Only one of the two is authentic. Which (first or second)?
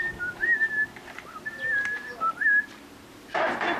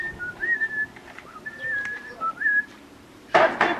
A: first